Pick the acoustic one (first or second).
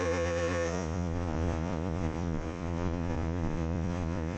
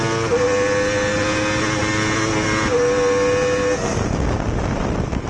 second